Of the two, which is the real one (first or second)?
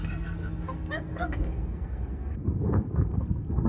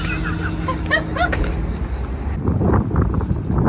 second